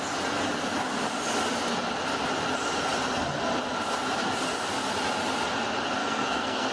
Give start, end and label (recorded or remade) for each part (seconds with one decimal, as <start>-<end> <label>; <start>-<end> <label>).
0.0-6.0 recorded; 6.0-6.7 remade